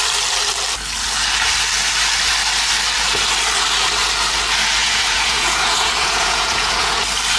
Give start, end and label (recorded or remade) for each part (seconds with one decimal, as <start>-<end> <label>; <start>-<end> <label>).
0.0-4.8 recorded; 4.8-7.0 remade; 7.0-7.4 recorded